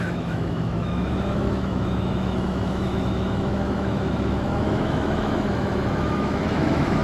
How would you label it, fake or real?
fake